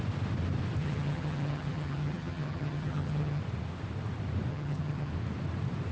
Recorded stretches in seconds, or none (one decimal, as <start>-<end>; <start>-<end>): 0.0-0.8; 3.4-4.5; 5.1-5.9